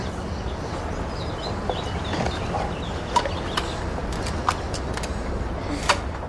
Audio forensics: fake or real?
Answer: real